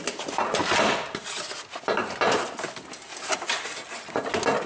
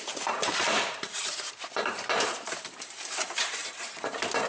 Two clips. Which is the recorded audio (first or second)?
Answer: first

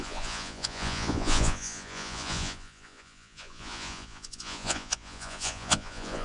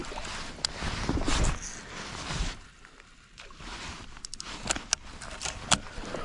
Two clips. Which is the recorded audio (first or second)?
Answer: second